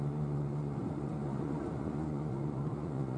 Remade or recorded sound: remade